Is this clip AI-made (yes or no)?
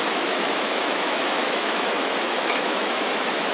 yes